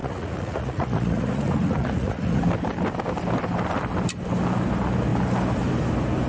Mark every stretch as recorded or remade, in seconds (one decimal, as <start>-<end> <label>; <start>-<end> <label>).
0.0-2.4 remade; 2.4-6.3 recorded

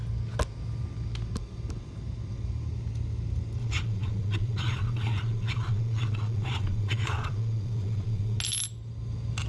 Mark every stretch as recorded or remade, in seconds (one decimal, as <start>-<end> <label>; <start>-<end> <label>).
0.0-3.6 recorded; 3.6-8.4 remade; 8.4-9.5 recorded

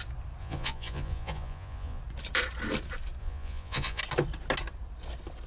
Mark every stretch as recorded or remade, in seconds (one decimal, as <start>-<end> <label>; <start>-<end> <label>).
0.0-0.4 recorded; 0.4-2.0 remade; 2.0-3.2 recorded; 3.2-4.0 remade; 4.0-5.5 recorded

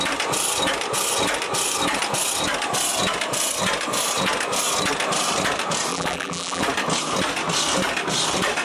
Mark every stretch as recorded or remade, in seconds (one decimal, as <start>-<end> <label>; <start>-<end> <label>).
0.0-5.9 recorded; 5.9-6.6 remade; 6.6-8.6 recorded

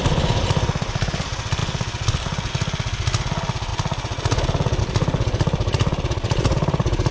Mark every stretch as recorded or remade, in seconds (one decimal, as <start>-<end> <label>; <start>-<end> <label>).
0.0-7.1 recorded

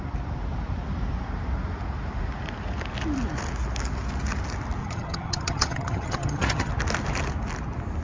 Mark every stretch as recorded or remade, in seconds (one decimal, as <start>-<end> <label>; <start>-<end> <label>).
0.0-4.8 recorded; 4.8-6.7 remade; 6.7-8.0 recorded